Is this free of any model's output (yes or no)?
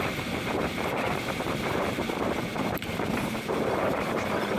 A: no